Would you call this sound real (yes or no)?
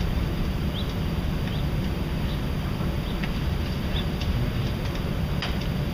yes